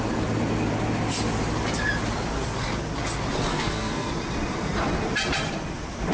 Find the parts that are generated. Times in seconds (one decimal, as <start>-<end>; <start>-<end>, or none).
3.5-4.1